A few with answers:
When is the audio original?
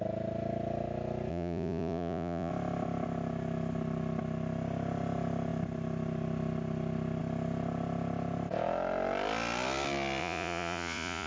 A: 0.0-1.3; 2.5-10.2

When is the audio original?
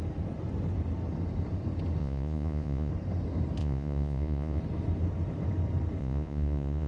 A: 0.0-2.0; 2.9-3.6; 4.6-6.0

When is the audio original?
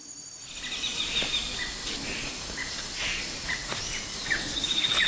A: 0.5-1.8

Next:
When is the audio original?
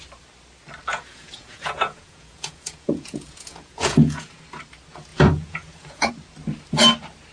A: 0.0-0.9; 4.4-5.1; 6.1-7.3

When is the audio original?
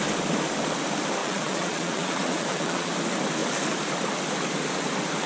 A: 0.0-1.2; 2.9-5.3